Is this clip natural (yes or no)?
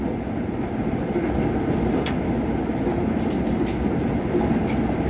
yes